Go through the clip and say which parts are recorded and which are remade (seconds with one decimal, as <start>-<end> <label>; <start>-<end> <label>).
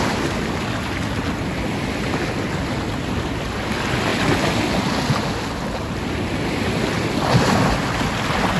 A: 0.0-4.1 recorded; 4.1-4.8 remade; 4.8-8.6 recorded